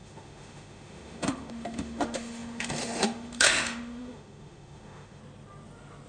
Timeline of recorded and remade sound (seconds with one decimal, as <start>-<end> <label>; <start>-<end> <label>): 0.0-5.2 remade; 5.2-6.1 recorded